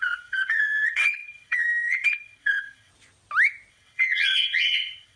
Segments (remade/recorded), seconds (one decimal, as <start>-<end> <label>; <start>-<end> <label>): 0.0-2.9 remade; 2.9-3.7 recorded; 3.7-5.2 remade